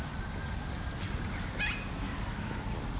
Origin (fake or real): real